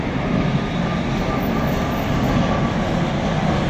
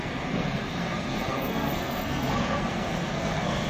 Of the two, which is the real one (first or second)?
first